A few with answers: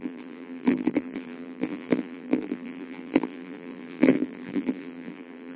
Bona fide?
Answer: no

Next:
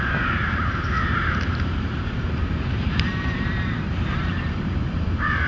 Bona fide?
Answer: no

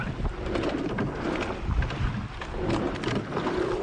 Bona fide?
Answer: yes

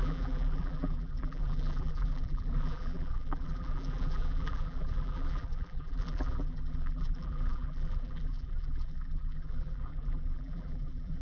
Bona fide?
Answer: no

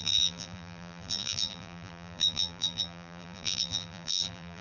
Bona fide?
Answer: no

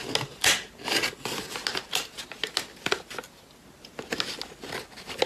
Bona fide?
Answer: yes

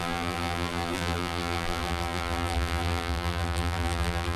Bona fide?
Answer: no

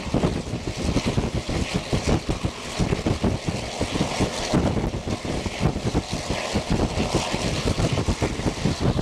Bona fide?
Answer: yes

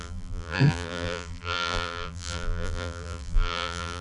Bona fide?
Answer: no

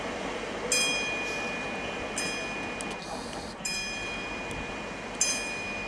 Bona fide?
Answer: yes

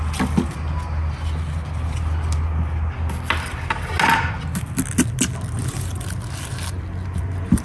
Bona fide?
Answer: yes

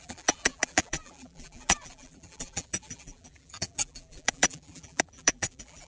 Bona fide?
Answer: no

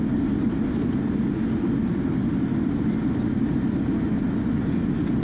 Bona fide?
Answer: yes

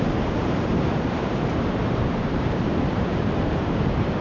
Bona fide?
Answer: no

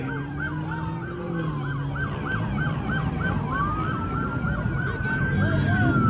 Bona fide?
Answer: yes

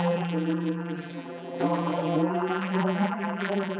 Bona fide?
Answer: no